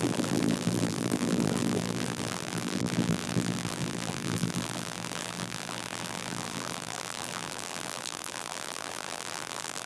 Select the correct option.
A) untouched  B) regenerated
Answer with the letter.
B